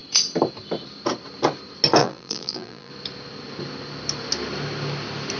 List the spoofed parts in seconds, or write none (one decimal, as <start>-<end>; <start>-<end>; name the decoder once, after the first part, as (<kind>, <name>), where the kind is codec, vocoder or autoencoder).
2.0-2.9 (vocoder, BigVGAN v2)